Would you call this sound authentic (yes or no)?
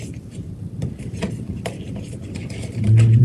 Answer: yes